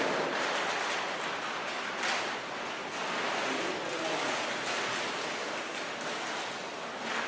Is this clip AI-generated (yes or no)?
no